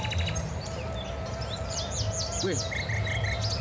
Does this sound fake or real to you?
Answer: real